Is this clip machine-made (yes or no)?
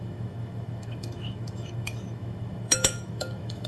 yes